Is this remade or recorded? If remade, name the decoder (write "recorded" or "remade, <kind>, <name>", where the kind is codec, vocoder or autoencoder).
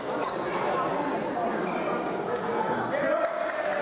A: recorded